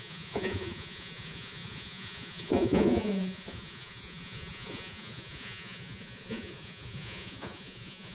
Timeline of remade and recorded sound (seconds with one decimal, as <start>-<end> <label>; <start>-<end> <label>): 0.0-8.1 remade